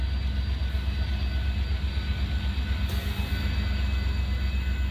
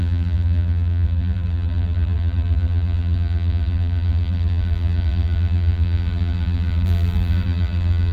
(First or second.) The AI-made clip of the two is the second